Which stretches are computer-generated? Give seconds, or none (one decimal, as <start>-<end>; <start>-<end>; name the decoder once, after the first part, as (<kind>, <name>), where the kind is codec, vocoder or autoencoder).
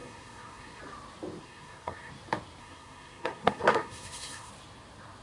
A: 0.0-0.8 (codec, SNAC); 1.4-2.1; 2.6-4.5